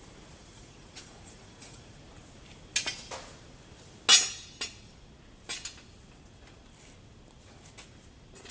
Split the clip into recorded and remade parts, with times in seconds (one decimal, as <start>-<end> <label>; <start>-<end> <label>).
0.0-0.4 recorded; 0.4-2.0 remade; 2.0-8.5 recorded